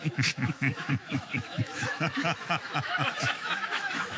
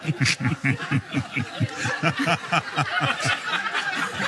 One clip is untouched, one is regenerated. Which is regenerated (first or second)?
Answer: first